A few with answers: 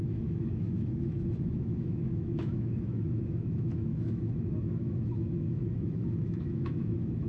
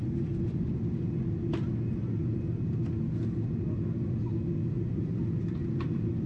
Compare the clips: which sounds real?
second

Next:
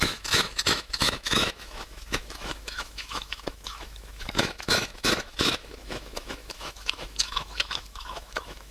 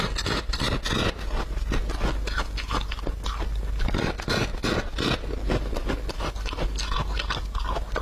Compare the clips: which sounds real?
second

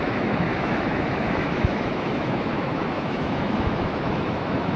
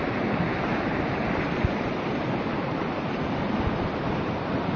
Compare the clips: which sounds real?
second